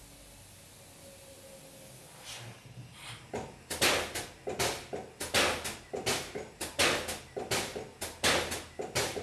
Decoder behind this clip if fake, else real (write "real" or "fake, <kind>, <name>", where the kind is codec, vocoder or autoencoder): real